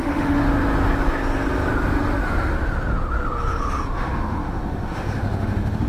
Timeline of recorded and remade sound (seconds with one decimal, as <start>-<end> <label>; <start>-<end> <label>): 0.0-0.4 remade; 0.4-3.9 recorded; 3.9-5.9 remade